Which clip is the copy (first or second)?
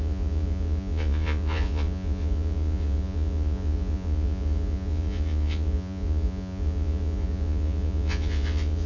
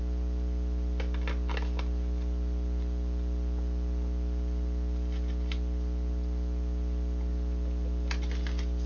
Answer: first